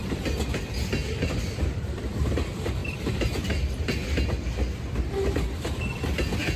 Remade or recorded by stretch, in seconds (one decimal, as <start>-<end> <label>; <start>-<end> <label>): 0.0-1.0 recorded; 1.0-2.1 remade; 2.1-6.6 recorded